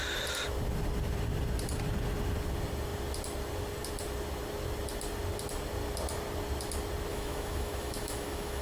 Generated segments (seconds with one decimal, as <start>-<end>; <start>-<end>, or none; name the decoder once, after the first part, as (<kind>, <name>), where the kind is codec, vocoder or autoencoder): 7.1-8.6 (autoencoder, DAC-VAE)